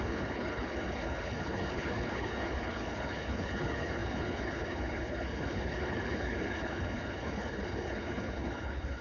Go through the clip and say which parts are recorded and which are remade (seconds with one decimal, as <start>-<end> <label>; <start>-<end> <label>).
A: 0.0-9.0 remade